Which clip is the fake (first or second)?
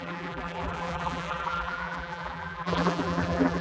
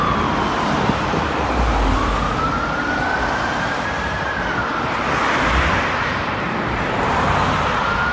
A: first